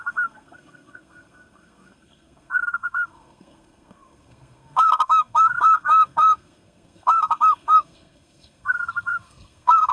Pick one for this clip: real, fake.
fake